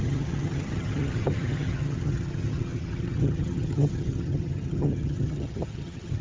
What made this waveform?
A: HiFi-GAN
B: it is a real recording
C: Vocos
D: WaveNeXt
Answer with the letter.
A